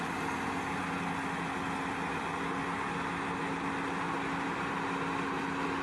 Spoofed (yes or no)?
no